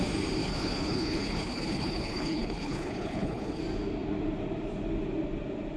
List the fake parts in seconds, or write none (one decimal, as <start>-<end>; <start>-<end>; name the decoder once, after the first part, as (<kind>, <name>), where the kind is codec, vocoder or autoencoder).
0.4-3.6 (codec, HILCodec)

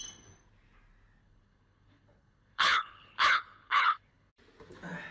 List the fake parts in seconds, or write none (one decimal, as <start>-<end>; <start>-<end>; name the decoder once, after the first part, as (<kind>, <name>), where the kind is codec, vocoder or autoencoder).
1.2-4.3 (codec, HILCodec)

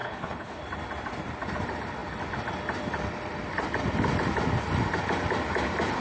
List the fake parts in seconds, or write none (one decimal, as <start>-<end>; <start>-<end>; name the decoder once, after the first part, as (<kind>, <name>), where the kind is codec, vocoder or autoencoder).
0.0-0.6 (codec, HILCodec)

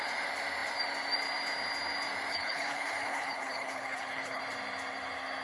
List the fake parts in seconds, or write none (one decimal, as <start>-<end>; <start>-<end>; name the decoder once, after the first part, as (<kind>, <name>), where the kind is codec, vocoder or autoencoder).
2.3-4.4 (codec, HILCodec)

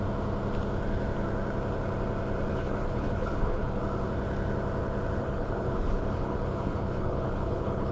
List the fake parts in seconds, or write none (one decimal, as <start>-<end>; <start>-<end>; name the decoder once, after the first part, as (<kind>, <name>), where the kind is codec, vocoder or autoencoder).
2.5-3.8 (codec, HILCodec); 5.2-7.9

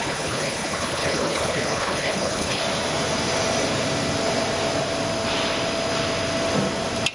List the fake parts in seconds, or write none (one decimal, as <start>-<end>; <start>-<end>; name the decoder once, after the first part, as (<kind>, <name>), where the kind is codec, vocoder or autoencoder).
0.0-2.6 (codec, HILCodec)

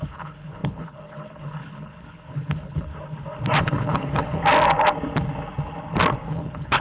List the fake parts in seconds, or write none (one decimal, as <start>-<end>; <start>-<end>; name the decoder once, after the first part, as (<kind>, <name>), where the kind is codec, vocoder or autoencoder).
0.0-2.9 (codec, HILCodec); 3.6-4.4; 6.3-6.8

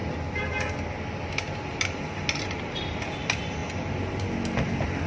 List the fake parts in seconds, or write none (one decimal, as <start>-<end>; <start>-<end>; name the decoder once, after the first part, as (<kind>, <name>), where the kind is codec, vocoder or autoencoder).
none